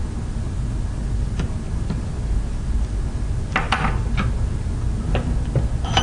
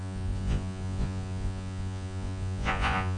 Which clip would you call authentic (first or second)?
first